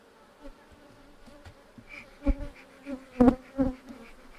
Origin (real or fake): real